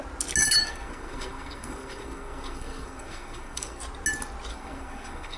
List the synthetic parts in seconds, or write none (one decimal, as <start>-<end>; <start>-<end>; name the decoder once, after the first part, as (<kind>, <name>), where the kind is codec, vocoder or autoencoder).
0.6-3.8 (codec, SNAC); 4.5-5.4